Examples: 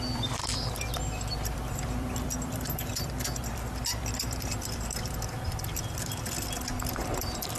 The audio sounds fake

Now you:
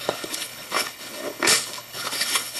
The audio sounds fake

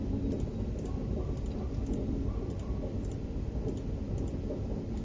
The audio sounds real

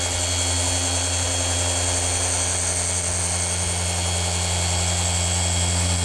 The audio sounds real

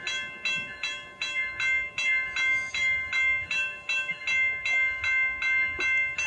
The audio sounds real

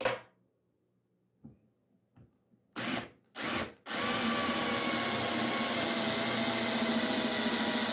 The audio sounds real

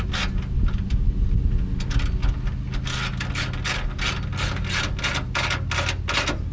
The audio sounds real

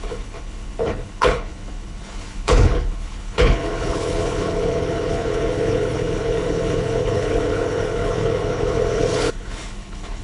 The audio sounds fake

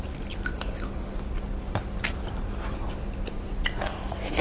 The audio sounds real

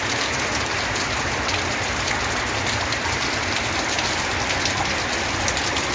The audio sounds real